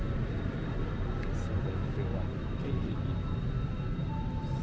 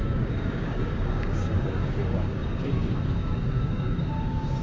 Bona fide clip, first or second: first